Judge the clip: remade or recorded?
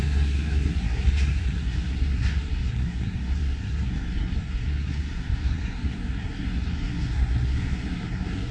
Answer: remade